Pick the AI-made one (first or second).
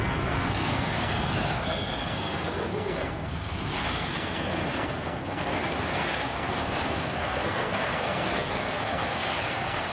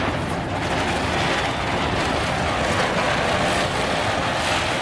first